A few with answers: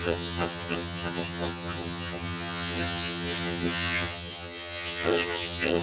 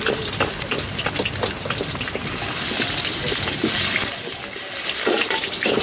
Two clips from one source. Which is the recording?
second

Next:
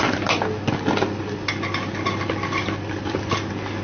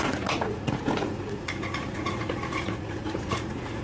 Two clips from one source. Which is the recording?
first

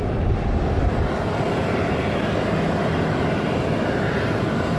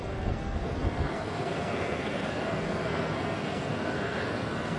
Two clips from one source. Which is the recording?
first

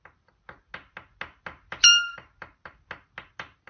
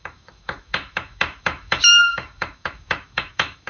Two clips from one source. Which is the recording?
first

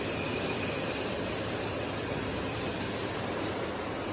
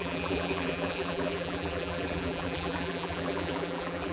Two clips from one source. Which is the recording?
first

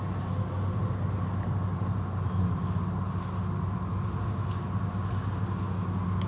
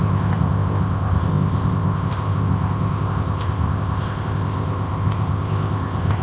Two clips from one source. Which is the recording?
first